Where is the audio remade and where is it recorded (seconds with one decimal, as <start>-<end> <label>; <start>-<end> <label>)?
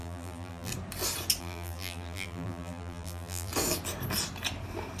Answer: 0.0-0.7 remade; 0.7-1.4 recorded; 1.4-3.5 remade; 3.5-5.0 recorded